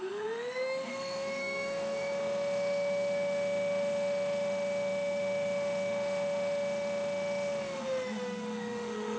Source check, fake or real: fake